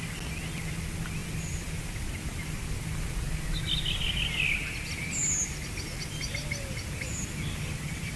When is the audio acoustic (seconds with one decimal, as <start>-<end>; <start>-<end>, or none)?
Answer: 0.0-8.2